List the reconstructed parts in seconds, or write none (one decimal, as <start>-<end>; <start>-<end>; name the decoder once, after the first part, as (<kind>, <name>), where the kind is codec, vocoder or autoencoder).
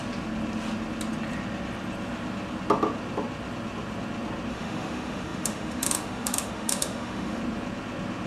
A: 4.5-7.4 (autoencoder, DAC-VAE)